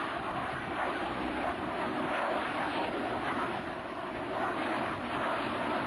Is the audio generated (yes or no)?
no